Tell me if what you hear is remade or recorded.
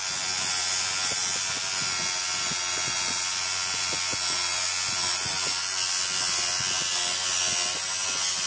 recorded